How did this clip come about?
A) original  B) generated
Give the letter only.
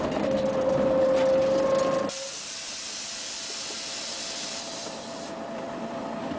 A